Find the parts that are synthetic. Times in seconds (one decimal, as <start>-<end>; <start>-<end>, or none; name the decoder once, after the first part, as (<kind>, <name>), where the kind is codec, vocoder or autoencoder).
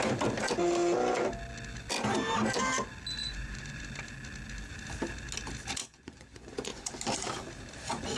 3.2-3.8 (vocoder, Vocos); 5.8-6.9